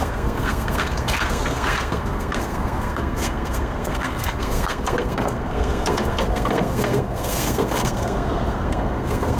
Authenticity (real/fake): fake